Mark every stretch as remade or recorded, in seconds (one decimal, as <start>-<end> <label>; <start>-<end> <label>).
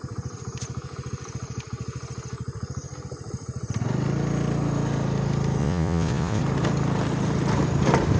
0.0-5.6 recorded; 5.6-6.4 remade; 6.4-8.2 recorded